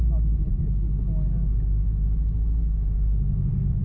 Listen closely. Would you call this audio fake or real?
real